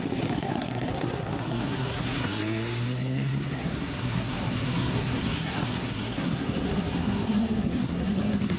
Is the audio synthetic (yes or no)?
yes